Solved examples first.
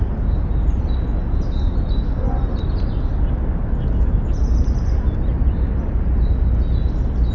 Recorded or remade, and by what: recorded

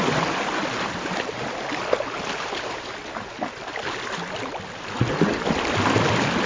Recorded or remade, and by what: recorded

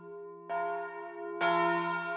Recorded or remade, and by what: recorded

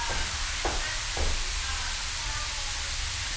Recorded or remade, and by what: recorded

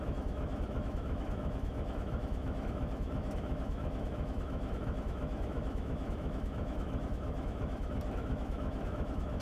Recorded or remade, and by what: remade, autoencoder, DAC-VAE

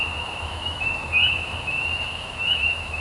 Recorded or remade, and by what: remade, autoencoder, DAC-VAE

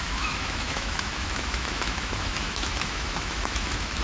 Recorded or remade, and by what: remade, autoencoder, DAC-VAE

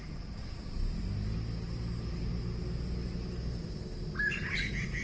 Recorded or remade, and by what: recorded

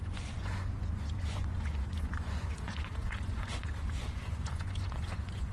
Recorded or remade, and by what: remade, vocoder, Vocos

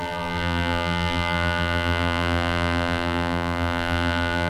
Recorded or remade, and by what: remade, vocoder, BigVGAN v2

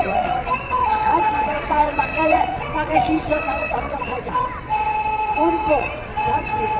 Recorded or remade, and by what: remade, vocoder, WaveNeXt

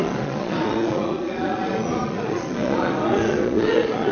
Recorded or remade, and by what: remade, vocoder, Vocos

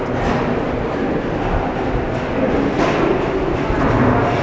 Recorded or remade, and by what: recorded